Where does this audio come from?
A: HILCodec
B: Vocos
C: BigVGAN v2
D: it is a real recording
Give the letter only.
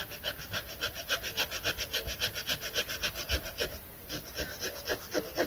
D